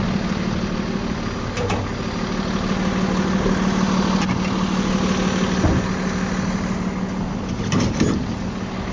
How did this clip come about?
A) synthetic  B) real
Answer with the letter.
B